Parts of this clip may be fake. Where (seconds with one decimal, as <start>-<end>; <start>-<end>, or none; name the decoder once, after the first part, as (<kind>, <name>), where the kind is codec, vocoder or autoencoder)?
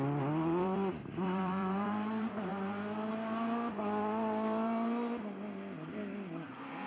0.0-6.9 (vocoder, BigVGAN v2)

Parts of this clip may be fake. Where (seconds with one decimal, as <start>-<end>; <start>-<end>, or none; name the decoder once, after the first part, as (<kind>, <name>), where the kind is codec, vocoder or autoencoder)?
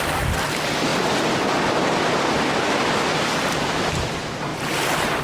0.0-4.5 (vocoder, BigVGAN v2)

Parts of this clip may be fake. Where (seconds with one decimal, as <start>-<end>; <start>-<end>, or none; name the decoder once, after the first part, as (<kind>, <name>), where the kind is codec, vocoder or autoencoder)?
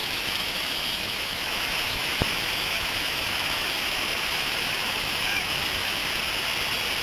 0.0-6.0 (autoencoder, DAC-VAE)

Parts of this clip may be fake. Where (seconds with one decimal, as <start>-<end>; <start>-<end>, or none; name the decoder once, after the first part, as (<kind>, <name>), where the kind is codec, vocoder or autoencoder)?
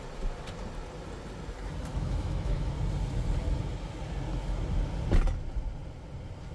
1.9-2.7 (autoencoder, DAC-VAE)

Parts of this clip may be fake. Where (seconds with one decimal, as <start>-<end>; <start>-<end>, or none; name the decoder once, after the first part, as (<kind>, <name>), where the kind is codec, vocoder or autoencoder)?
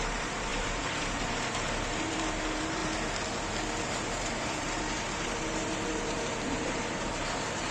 0.0-2.8 (vocoder, BigVGAN v2); 3.8-7.7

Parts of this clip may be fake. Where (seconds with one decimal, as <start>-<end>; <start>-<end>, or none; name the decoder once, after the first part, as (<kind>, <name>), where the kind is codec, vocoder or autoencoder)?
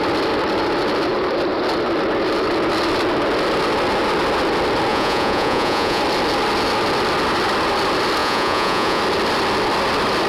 4.9-6.0 (vocoder, Vocos); 8.2-9.0